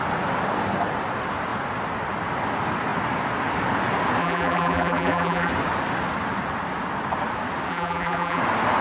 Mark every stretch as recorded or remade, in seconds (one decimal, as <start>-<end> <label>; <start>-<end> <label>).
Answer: 0.0-4.2 recorded; 4.2-5.5 remade; 5.5-7.7 recorded; 7.7-8.4 remade; 8.4-8.8 recorded